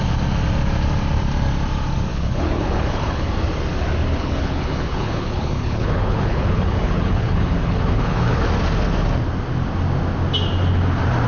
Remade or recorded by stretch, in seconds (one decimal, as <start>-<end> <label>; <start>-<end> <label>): 0.0-2.1 recorded; 2.1-3.3 remade; 3.3-4.1 recorded; 4.1-8.4 remade; 8.4-11.3 recorded